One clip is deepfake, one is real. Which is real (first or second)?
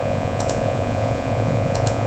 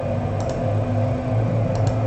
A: second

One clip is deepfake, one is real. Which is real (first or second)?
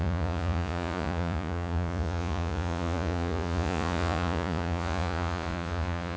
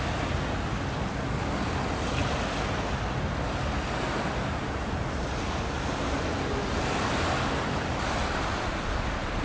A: second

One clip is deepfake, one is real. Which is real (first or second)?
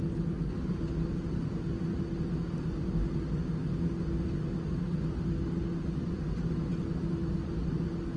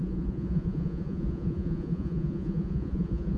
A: first